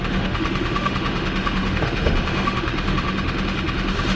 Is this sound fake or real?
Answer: fake